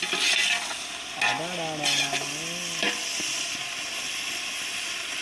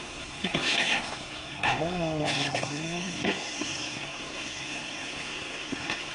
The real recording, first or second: first